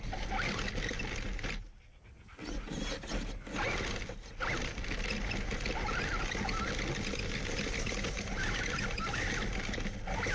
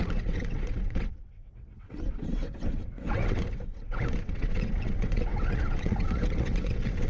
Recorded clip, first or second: first